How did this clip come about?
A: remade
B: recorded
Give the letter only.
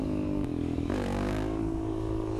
A